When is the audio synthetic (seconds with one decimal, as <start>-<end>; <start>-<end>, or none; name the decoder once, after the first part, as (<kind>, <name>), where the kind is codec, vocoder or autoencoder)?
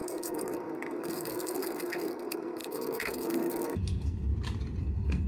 0.0-4.3 (codec, SNAC); 4.8-5.3